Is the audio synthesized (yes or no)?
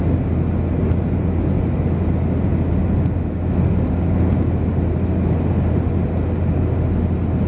no